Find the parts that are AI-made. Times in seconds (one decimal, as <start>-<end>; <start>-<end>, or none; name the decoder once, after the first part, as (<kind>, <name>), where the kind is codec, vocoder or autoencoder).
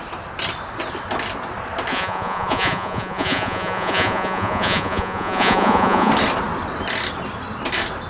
1.9-6.1 (vocoder, Vocos)